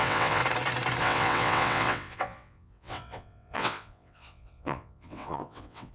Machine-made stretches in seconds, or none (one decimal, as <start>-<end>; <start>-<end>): 0.0-0.4; 1.0-5.9